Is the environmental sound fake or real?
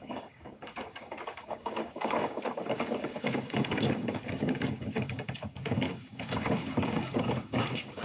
fake